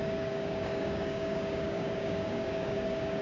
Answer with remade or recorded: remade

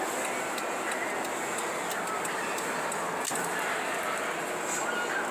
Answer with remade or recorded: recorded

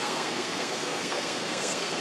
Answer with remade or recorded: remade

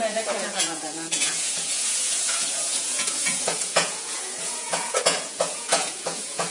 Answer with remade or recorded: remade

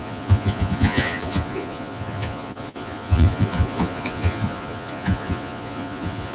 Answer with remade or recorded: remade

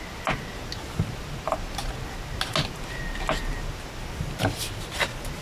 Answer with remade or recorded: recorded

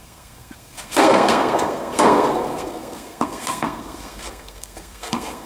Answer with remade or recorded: remade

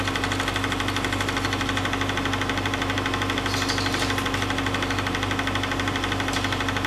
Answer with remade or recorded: recorded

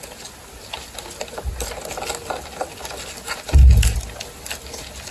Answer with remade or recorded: recorded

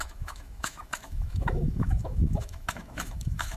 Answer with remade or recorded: remade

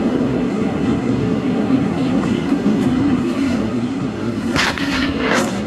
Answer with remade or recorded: remade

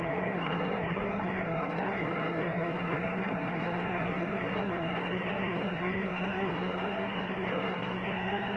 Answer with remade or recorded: remade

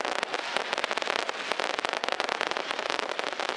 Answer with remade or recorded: recorded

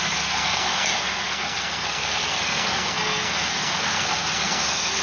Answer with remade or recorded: remade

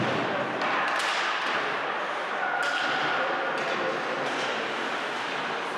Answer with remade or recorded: recorded